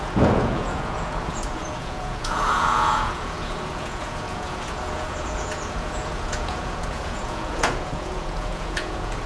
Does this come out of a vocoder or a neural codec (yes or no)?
yes